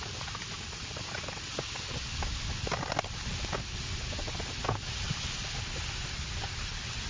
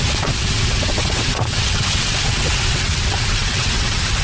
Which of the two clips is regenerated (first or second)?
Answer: second